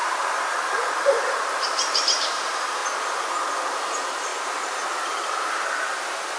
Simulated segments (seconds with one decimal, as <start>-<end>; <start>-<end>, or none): 0.7-2.8; 3.7-4.3